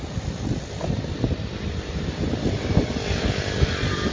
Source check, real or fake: real